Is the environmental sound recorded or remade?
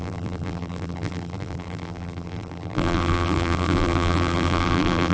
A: remade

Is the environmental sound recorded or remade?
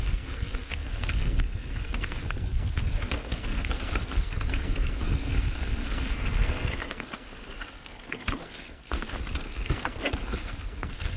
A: remade